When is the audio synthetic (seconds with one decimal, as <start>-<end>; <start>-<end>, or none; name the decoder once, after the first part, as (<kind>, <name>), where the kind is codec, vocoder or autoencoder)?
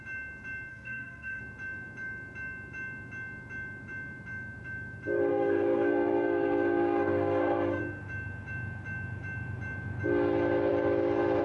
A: 0.7-1.4 (codec, SNAC); 5.3-7.8